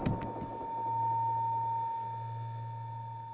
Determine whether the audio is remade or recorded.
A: recorded